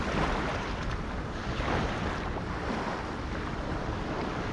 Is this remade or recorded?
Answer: recorded